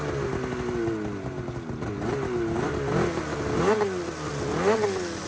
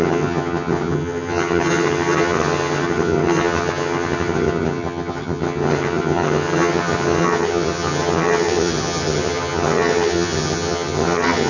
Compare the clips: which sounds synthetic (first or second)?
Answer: second